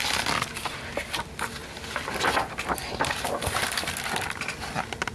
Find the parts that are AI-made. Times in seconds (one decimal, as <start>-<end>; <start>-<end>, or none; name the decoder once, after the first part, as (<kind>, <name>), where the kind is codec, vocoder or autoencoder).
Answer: none